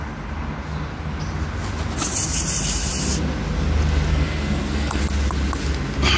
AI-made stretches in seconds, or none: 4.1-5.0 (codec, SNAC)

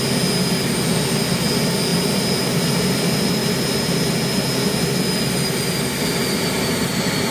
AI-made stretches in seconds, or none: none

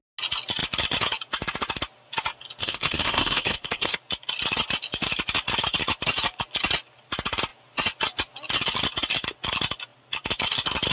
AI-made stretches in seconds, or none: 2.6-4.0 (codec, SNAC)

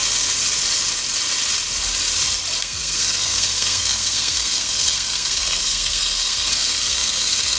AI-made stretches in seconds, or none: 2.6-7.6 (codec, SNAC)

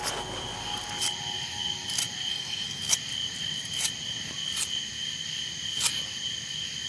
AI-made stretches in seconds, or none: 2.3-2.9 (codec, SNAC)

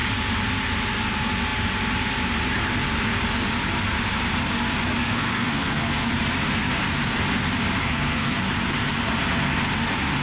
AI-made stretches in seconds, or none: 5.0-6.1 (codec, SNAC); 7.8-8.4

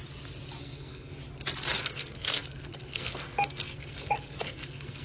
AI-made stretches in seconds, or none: 0.6-1.2 (codec, SNAC); 1.8-5.0